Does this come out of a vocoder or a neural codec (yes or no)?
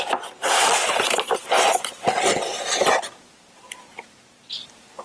no